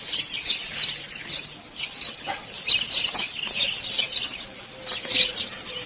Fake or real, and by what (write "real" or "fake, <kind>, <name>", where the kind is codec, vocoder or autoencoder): real